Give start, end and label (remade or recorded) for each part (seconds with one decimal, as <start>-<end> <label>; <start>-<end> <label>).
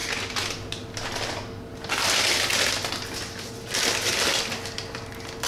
0.0-5.5 recorded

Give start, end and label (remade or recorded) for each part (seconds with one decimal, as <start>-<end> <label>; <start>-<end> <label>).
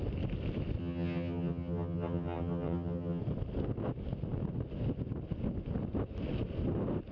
0.0-0.8 recorded; 0.8-3.2 remade; 3.2-7.1 recorded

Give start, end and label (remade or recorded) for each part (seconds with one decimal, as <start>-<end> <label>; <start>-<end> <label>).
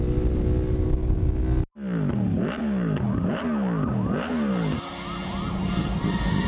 0.0-2.6 recorded; 2.6-3.4 remade; 3.4-6.5 recorded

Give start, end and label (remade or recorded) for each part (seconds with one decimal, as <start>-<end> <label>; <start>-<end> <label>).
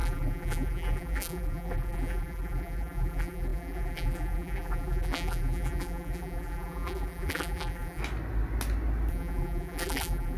0.0-8.0 remade; 8.0-9.1 recorded; 9.1-10.4 remade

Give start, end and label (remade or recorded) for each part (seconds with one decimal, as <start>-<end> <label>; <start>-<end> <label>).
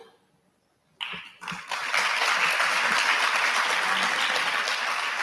0.0-5.2 recorded